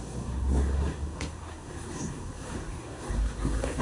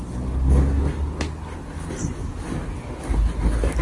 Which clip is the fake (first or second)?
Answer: first